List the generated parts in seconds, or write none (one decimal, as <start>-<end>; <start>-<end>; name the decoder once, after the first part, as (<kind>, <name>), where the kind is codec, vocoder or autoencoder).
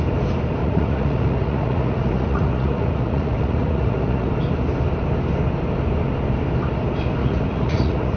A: 0.6-4.3 (vocoder, Vocos); 7.2-8.2